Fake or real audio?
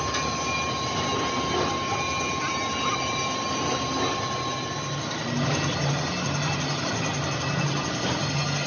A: real